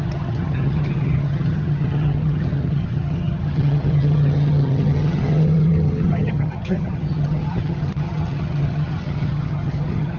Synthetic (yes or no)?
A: yes